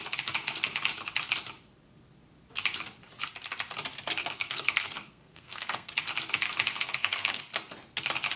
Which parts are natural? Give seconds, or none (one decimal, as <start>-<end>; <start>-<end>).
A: 0.0-4.2; 5.9-6.7; 7.4-8.4